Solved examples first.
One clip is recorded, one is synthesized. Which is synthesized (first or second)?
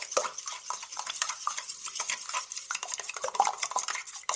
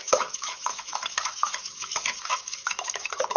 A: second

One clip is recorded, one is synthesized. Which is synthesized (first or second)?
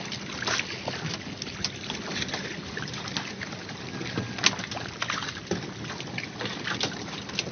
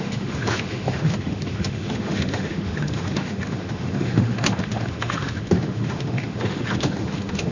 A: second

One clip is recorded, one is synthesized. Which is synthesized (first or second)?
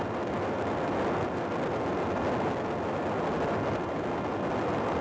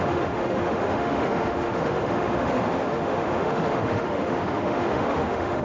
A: second